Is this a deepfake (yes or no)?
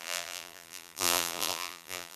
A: yes